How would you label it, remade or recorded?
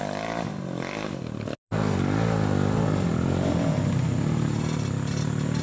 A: recorded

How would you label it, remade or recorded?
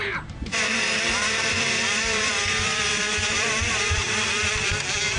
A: remade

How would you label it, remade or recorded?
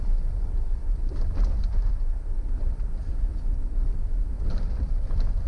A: remade